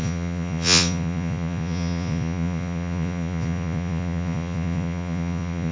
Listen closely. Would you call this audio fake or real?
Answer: fake